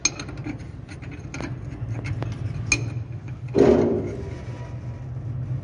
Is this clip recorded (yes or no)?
yes